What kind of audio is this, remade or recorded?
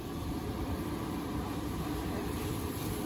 remade